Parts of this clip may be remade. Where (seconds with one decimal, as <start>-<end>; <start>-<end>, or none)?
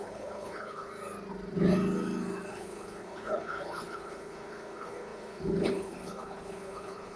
0.0-0.9; 2.5-7.2